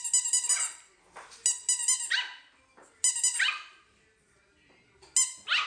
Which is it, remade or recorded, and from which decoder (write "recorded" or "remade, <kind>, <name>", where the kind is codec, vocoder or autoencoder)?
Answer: recorded